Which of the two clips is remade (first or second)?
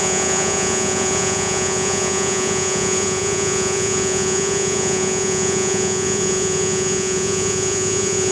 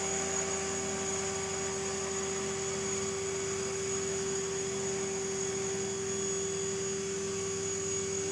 first